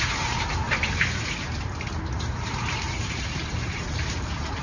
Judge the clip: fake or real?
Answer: fake